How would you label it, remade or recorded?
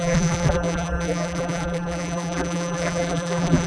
remade